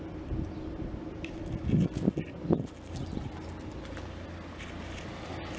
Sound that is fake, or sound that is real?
real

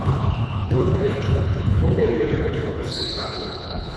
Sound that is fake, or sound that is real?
fake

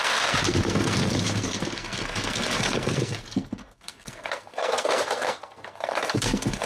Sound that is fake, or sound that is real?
fake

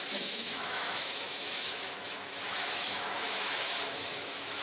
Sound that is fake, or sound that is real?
fake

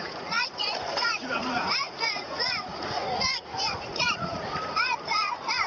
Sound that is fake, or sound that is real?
fake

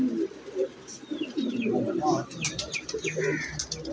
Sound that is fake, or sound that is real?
real